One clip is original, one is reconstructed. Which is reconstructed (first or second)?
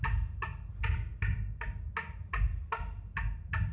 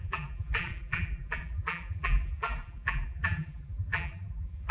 second